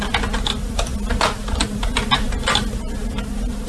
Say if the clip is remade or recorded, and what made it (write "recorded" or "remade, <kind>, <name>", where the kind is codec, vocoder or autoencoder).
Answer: recorded